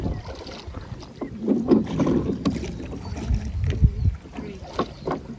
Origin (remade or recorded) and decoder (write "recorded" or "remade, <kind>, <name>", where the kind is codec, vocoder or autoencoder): recorded